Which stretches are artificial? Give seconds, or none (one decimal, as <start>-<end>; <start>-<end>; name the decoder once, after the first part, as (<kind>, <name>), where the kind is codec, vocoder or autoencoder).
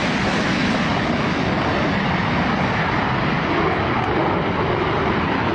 none